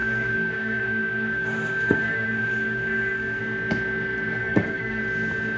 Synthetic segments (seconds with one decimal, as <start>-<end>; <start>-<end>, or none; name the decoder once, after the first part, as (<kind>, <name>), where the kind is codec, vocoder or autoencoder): 0.0-3.4 (codec, SNAC); 4.4-5.0